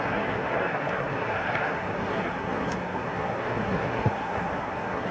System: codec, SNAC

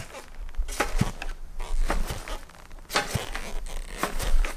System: none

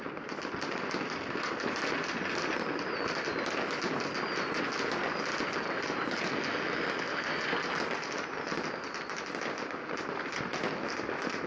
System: none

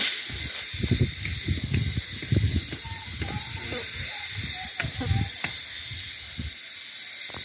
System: none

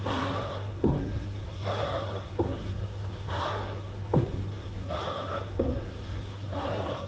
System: codec, SNAC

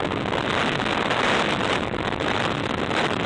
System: none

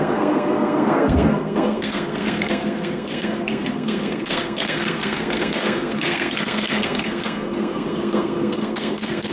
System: codec, SNAC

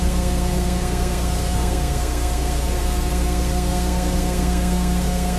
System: codec, SNAC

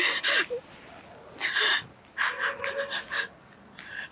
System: none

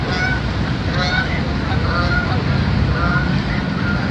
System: none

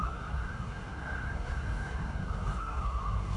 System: codec, SNAC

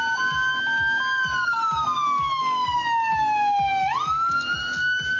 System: none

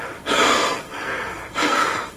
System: codec, SNAC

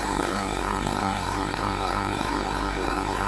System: codec, SNAC